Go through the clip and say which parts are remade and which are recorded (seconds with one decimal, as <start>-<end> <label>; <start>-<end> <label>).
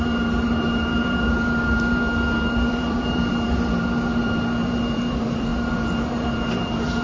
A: 0.0-7.0 remade